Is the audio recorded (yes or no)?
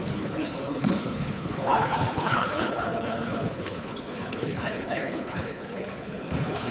no